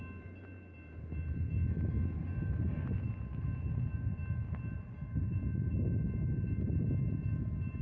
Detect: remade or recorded recorded